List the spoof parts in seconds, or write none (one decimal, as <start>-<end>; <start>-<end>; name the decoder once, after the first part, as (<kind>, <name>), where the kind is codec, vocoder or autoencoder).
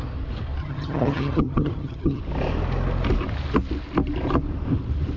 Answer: 0.6-2.2 (vocoder, HiFi-GAN)